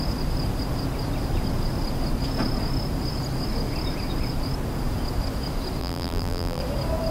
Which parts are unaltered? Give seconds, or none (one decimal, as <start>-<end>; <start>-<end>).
0.0-5.8; 6.6-7.1

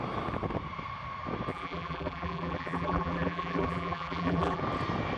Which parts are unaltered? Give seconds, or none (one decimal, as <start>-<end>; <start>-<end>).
0.0-1.5; 4.6-5.2